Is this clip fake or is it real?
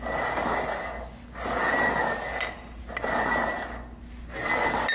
real